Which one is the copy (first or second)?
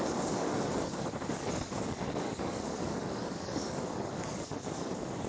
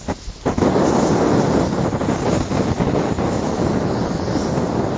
first